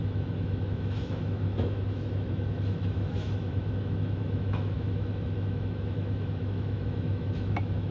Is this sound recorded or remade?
remade